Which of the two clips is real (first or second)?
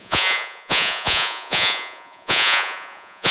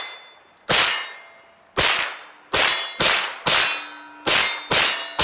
second